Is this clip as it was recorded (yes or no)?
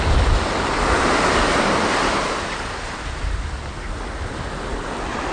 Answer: yes